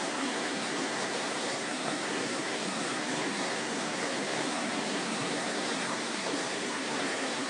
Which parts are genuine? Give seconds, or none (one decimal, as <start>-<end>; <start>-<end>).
none